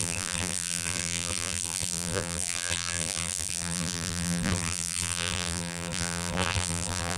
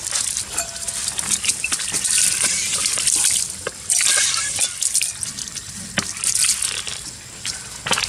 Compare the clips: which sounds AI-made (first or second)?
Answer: first